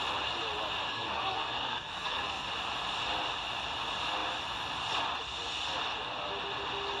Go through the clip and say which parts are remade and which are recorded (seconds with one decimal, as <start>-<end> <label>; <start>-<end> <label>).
0.0-0.9 recorded; 0.9-2.5 remade; 2.5-7.0 recorded